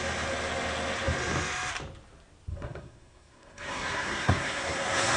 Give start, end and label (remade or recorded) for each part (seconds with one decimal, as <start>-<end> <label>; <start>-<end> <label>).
0.0-2.5 recorded; 2.5-5.2 remade